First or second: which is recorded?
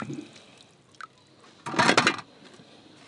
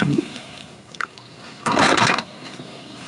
first